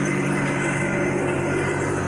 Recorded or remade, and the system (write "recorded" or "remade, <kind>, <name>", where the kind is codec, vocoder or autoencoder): recorded